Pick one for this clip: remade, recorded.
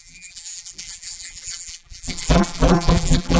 remade